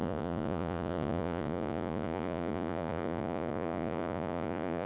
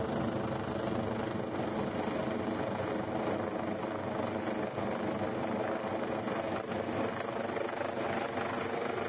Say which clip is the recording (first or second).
second